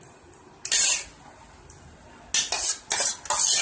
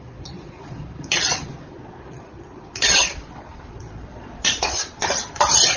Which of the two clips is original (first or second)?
first